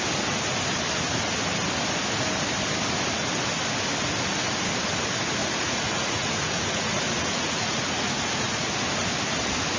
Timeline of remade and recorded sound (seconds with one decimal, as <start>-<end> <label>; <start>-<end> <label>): 0.0-5.4 recorded; 5.4-8.6 remade; 8.6-9.8 recorded